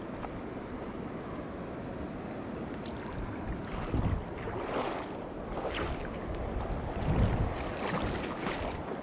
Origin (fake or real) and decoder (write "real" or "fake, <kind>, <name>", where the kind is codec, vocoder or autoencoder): real